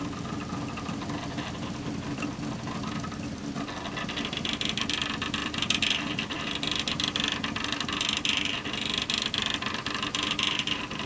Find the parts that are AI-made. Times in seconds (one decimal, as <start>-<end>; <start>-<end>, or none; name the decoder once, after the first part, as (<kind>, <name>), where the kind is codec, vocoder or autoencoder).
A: 5.4-6.5 (vocoder, BigVGAN v2)